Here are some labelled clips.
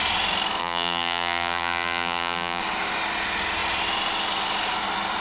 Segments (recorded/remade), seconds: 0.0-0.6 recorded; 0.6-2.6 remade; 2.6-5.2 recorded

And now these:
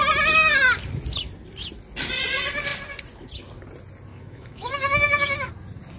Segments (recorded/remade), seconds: 0.0-4.1 recorded; 4.1-5.5 remade; 5.5-6.0 recorded

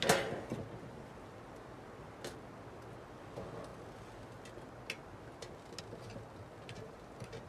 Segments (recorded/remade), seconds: 0.0-7.5 recorded

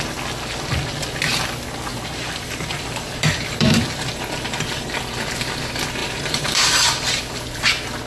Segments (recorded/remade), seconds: 0.0-1.9 recorded; 1.9-4.2 remade; 4.2-6.0 recorded; 6.0-7.2 remade; 7.2-8.1 recorded